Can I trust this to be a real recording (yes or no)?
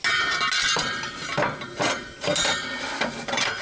yes